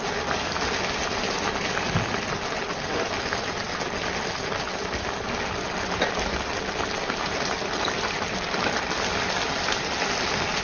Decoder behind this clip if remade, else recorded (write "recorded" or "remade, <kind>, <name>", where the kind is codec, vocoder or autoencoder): recorded